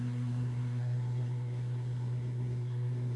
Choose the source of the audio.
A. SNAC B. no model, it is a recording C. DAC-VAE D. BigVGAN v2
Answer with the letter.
A